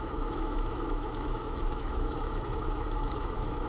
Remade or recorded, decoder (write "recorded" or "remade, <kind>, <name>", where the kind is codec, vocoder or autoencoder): remade, autoencoder, DAC-VAE